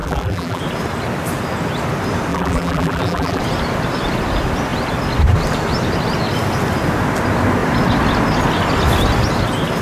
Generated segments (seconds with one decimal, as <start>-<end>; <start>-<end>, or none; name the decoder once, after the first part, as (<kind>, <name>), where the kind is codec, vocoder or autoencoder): 0.0-0.6 (vocoder, BigVGAN v2); 2.3-3.4

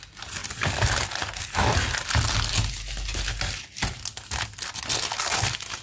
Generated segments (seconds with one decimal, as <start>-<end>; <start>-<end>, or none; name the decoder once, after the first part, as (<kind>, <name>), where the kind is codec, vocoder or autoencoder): none